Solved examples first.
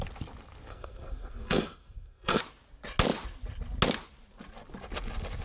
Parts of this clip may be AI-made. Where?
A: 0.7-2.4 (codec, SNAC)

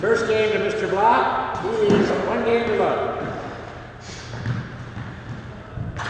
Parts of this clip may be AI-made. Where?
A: none

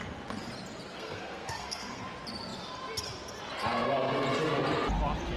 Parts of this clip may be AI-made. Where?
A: 0.9-2.0 (codec, SNAC)

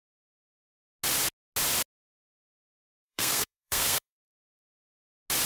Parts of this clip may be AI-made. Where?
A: 2.8-4.6 (codec, SNAC)

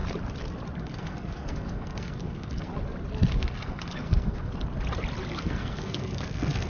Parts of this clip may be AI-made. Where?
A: 0.8-2.7 (codec, SNAC); 3.3-4.5; 5.3-6.7

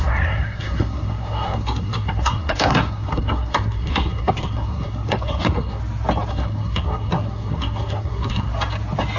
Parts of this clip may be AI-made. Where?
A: 0.0-5.8 (codec, SNAC); 6.3-8.5

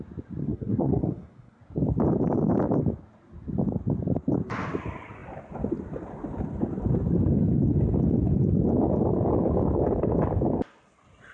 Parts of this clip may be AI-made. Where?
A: 0.4-1.6 (codec, SNAC)

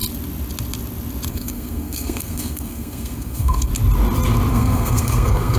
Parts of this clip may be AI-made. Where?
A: 1.3-3.7 (codec, SNAC); 4.5-5.6